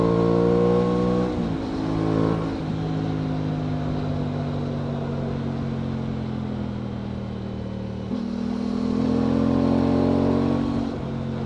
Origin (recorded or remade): recorded